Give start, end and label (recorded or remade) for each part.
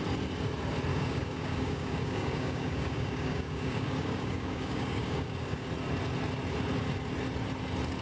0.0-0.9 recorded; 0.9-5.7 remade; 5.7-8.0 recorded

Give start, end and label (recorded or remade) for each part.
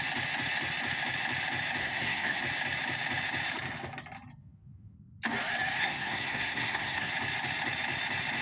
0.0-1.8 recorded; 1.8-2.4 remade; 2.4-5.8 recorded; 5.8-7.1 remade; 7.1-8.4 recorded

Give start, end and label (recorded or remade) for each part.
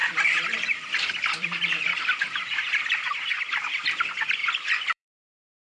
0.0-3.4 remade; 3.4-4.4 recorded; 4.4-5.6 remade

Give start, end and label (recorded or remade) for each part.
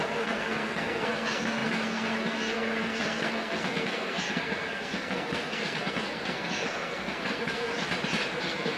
0.0-7.7 remade; 7.7-8.4 recorded; 8.4-8.8 remade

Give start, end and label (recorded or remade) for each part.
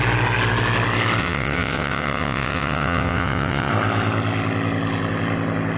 0.0-1.2 recorded; 1.2-3.7 remade; 3.7-5.8 recorded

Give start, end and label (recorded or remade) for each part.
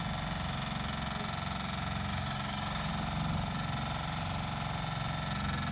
0.0-2.1 recorded; 2.1-2.9 remade; 2.9-5.7 recorded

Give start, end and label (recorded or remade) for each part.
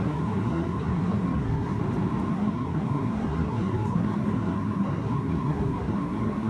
0.0-1.8 remade; 1.8-2.3 recorded; 2.3-6.5 remade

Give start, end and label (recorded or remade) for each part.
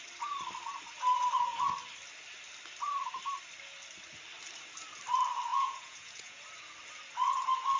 0.0-5.5 recorded; 5.5-6.4 remade; 6.4-7.8 recorded